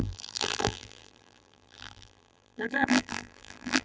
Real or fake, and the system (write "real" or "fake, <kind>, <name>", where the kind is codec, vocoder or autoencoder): fake, vocoder, BigVGAN v2